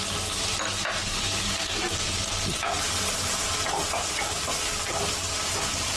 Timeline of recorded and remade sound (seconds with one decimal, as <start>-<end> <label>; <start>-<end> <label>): 0.0-1.0 recorded; 1.0-1.8 remade; 1.8-6.0 recorded